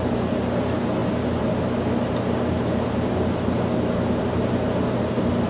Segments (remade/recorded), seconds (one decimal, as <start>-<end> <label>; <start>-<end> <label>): 0.0-5.5 recorded